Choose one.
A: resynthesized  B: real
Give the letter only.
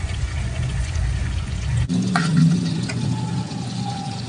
A